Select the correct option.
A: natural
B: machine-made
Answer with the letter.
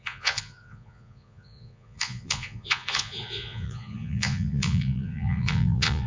B